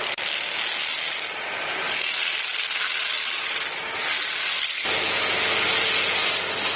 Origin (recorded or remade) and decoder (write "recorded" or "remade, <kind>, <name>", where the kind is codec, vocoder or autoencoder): recorded